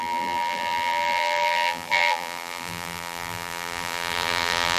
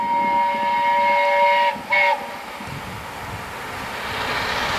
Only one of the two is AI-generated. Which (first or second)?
first